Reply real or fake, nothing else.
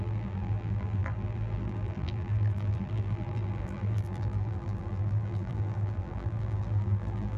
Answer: fake